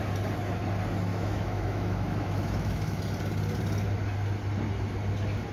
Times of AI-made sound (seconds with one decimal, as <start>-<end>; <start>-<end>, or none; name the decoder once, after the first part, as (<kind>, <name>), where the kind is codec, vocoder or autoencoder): 1.1-3.0 (autoencoder, DAC-VAE)